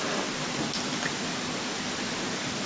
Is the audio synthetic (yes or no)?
no